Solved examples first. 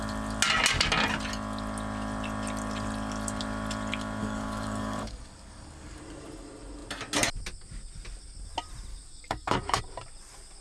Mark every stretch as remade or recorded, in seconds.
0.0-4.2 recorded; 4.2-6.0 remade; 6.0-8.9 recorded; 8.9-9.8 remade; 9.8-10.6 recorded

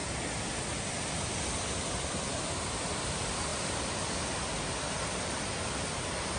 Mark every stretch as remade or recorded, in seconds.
0.0-6.4 recorded

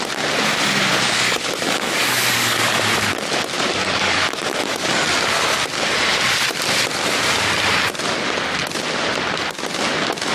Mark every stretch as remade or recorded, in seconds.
0.0-0.9 recorded; 0.9-3.1 remade; 3.1-3.7 recorded; 3.7-4.9 remade; 4.9-10.3 recorded

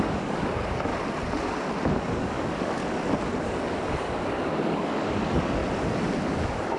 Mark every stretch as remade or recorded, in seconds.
0.0-0.9 remade; 0.9-1.8 recorded; 1.8-2.8 remade; 2.8-3.4 recorded; 3.4-5.6 remade; 5.6-6.3 recorded; 6.3-6.8 remade